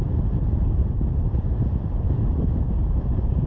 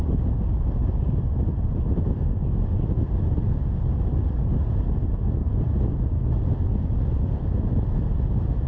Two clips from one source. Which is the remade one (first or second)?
first